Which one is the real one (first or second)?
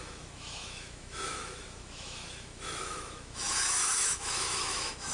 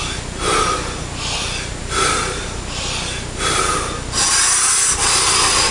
second